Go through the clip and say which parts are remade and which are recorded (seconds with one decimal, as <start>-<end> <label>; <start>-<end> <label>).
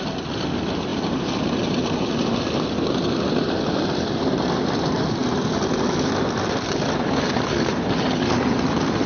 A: 0.0-9.1 recorded